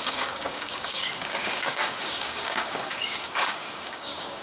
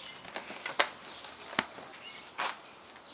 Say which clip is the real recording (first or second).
second